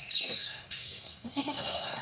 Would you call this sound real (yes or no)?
no